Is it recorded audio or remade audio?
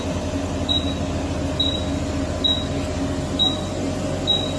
recorded